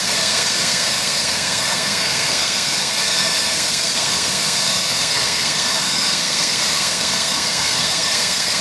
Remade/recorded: remade